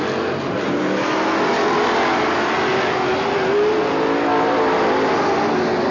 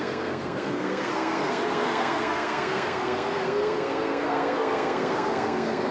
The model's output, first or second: second